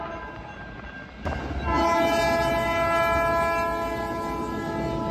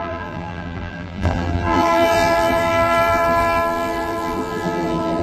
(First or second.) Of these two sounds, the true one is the first